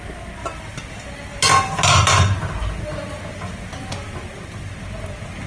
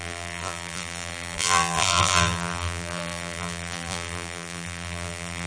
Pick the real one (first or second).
first